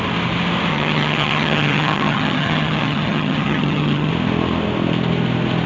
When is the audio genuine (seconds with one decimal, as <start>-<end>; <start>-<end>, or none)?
0.0-0.7; 4.1-5.7